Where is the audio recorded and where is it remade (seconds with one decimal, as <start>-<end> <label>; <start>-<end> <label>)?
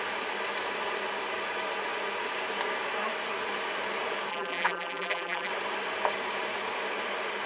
0.0-4.3 recorded; 4.3-5.5 remade; 5.5-7.5 recorded